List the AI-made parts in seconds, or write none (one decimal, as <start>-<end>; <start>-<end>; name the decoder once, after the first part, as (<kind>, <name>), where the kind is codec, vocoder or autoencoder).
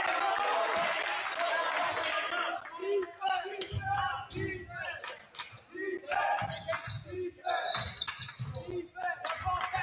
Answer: 2.8-3.7 (autoencoder, DAC-VAE)